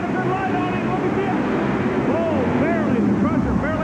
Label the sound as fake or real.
real